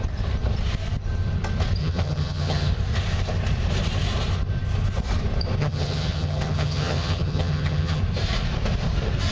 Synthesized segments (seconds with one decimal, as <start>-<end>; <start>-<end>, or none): 1.8-2.7; 5.6-8.0